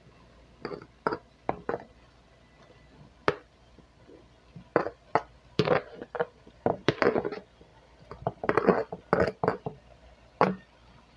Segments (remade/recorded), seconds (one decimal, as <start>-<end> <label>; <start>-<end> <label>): 0.0-4.7 recorded; 4.7-6.9 remade; 6.9-11.2 recorded